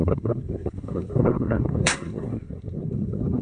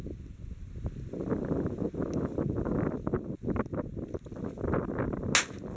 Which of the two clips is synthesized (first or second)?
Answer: first